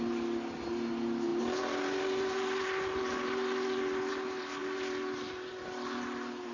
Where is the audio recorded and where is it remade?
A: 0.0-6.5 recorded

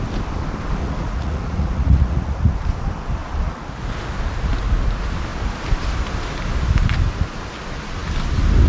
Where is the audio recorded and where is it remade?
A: 0.0-0.8 recorded; 0.8-2.6 remade; 2.6-8.7 recorded